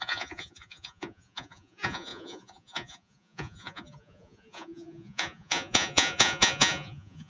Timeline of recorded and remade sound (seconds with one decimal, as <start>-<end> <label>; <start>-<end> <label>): 0.0-7.3 remade